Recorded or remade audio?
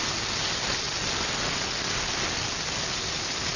recorded